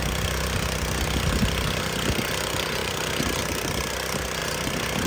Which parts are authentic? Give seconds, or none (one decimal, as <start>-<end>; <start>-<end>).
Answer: 0.0-2.8; 3.3-4.4